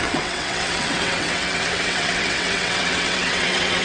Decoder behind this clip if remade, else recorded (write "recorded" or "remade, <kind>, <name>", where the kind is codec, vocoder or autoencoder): remade, vocoder, WaveNeXt